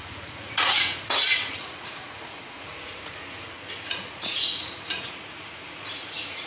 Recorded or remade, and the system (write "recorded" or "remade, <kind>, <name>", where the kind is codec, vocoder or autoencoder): remade, vocoder, Vocos